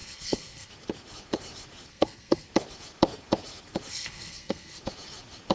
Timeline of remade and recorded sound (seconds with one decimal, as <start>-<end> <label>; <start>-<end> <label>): 0.0-0.7 remade; 0.7-1.9 recorded; 1.9-2.5 remade; 2.5-3.9 recorded; 3.9-4.8 remade; 4.8-5.5 recorded